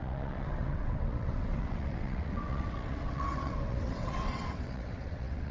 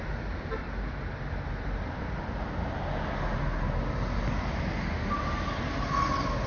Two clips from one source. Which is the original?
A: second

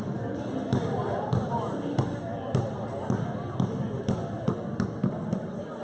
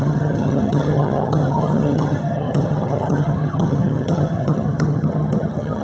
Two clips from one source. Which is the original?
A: first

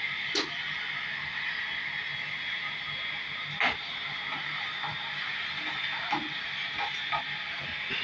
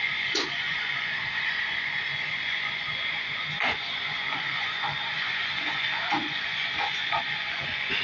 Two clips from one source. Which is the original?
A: first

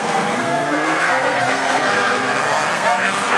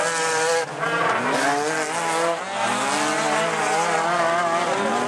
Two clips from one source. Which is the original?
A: second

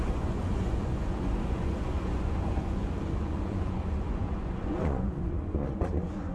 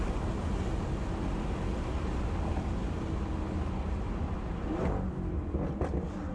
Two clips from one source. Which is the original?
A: second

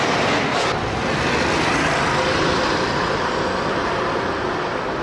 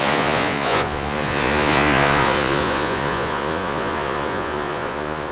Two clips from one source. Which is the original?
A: first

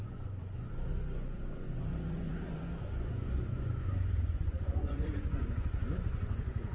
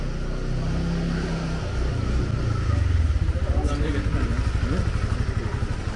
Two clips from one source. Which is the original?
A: second